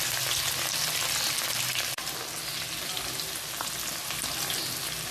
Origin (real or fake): real